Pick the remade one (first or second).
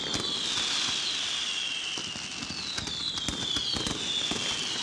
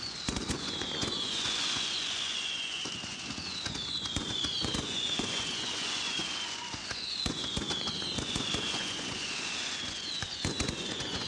second